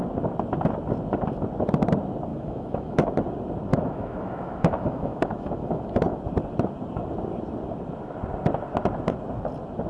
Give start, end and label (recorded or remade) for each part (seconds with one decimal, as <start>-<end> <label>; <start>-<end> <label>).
0.0-2.3 recorded; 2.3-3.1 remade; 3.1-3.7 recorded; 3.7-6.2 remade; 6.2-9.9 recorded